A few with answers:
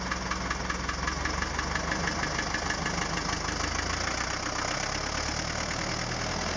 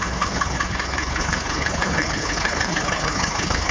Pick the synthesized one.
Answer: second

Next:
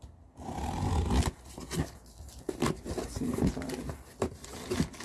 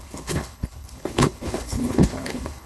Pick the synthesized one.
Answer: second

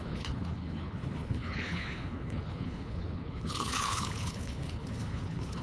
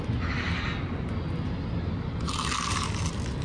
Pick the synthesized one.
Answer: first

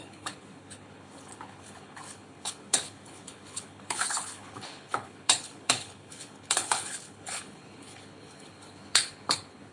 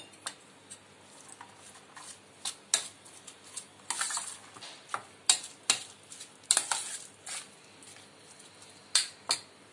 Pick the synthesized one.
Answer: first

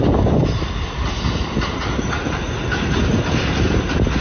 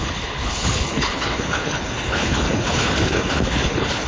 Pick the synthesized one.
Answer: second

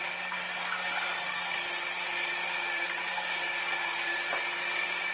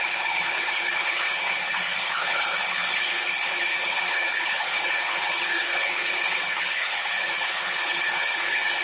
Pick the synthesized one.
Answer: second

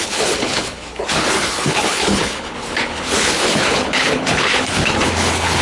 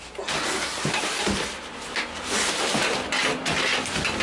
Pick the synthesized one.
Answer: first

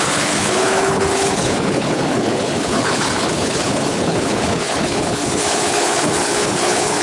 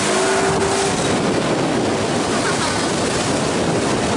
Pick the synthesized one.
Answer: first